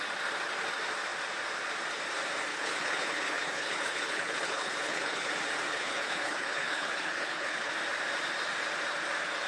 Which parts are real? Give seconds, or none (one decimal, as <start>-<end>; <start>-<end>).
0.0-2.5; 5.3-5.7; 7.7-9.5